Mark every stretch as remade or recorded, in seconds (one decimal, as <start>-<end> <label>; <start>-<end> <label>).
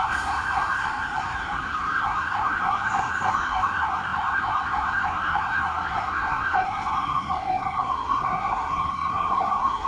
0.0-9.9 remade